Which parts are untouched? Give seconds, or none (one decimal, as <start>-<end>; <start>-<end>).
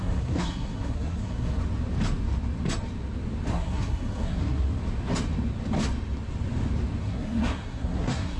1.6-3.5; 4.8-7.0